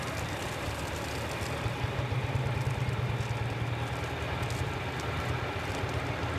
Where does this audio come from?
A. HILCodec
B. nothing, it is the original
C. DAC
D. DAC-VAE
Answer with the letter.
B